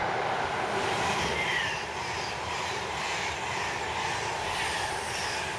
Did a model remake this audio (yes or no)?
no